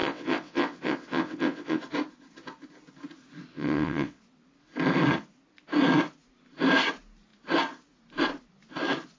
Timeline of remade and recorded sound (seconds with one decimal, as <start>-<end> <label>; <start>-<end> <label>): 0.0-1.8 remade; 1.8-3.5 recorded; 3.5-4.2 remade; 4.2-9.2 recorded